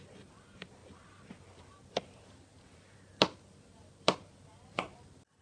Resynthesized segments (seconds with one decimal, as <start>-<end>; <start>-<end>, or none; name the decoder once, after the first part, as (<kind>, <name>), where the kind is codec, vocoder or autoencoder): none